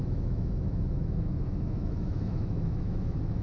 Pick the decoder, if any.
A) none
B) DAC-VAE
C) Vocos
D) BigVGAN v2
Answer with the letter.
B